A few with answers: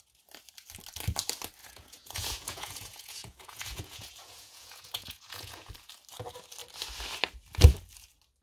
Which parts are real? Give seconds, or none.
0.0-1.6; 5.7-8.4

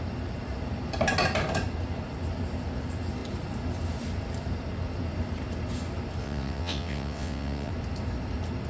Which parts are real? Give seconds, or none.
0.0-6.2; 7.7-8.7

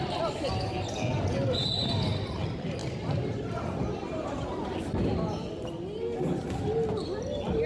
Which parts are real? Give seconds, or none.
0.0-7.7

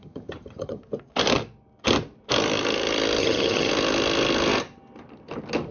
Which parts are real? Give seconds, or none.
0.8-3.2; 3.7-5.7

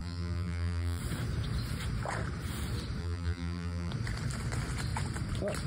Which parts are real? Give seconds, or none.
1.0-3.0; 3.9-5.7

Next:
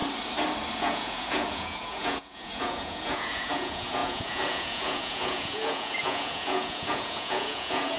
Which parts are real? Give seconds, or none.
0.0-0.8

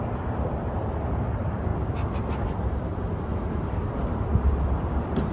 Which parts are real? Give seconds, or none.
0.0-5.3